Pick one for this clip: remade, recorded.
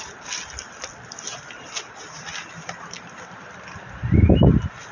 recorded